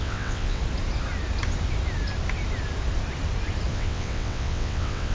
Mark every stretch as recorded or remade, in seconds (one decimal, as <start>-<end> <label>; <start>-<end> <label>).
0.0-0.6 remade; 0.6-3.7 recorded; 3.7-5.1 remade